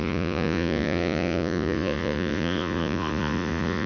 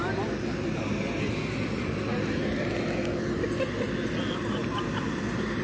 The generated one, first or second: first